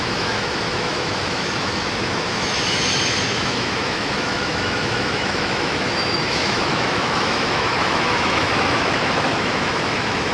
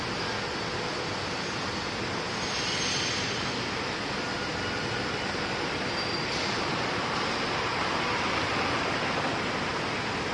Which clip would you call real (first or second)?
second